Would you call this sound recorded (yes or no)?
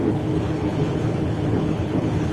no